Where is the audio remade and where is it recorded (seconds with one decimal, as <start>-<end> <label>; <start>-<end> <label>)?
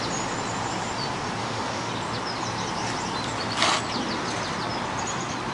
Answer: 0.0-1.4 recorded; 1.4-1.9 remade; 1.9-5.5 recorded